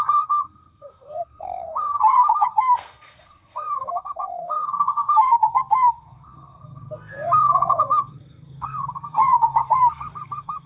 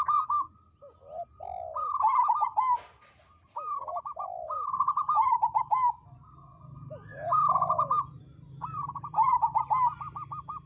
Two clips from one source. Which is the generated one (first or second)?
first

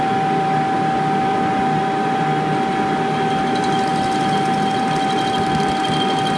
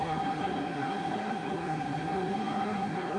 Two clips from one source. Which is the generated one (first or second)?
second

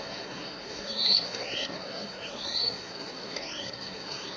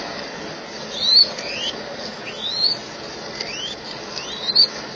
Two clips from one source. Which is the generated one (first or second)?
first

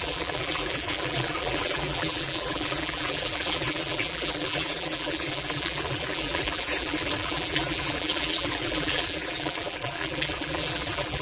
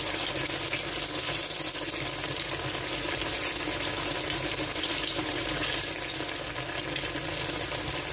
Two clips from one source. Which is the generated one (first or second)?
first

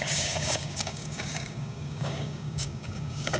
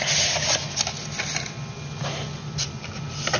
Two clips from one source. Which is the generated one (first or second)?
first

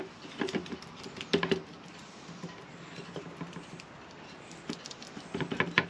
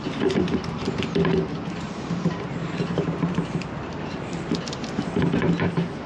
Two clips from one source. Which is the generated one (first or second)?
second